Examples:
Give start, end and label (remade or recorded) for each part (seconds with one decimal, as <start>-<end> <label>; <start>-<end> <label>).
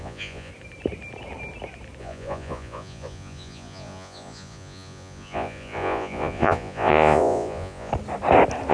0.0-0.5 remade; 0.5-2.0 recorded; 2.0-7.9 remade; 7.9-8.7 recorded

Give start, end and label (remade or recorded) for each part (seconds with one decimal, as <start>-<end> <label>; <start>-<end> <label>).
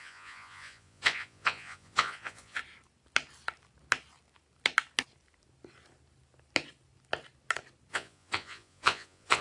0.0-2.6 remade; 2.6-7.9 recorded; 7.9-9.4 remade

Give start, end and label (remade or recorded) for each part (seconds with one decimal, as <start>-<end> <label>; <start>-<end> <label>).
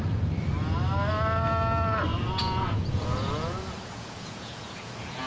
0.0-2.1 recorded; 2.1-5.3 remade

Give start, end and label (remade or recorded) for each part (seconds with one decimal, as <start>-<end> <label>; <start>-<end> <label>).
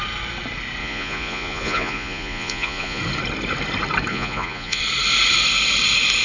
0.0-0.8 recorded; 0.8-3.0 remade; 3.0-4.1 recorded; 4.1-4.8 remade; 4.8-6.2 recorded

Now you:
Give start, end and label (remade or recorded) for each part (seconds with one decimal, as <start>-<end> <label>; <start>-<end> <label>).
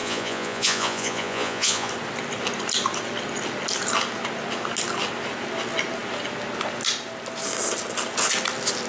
0.0-1.9 remade; 1.9-8.9 recorded